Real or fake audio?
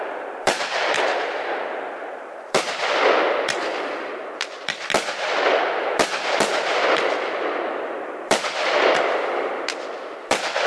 fake